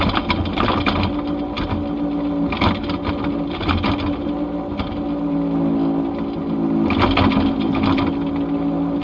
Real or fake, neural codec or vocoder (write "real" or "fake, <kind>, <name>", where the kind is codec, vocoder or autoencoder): real